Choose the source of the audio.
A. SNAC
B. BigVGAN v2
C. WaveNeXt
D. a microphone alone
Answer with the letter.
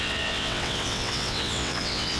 C